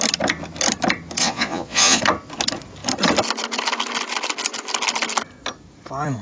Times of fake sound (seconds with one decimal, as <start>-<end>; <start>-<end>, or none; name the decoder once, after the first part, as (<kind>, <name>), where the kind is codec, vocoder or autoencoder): 1.2-2.0 (vocoder, Vocos)